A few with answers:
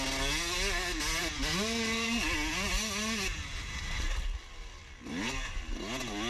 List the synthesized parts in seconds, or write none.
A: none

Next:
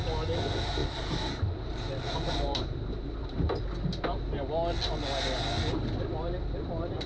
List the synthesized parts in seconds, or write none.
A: 0.8-3.6 (vocoder, BigVGAN v2)